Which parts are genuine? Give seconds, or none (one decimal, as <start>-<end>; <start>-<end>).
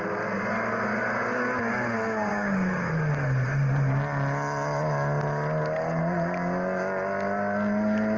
0.0-2.3; 2.9-8.2